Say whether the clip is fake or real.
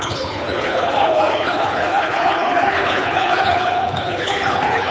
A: fake